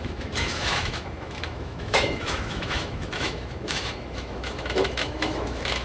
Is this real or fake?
fake